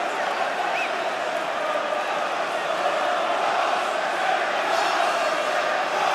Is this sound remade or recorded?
recorded